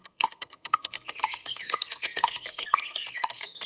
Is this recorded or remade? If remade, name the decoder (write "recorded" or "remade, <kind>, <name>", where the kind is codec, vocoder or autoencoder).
remade, codec, SNAC